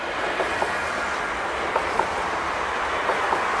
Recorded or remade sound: recorded